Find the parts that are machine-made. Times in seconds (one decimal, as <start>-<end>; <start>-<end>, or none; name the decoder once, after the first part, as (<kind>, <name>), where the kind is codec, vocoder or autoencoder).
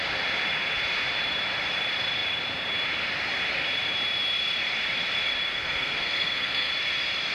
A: 5.5-6.7 (codec, SNAC)